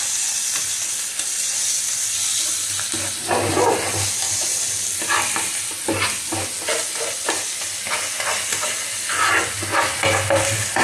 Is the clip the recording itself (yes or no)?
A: yes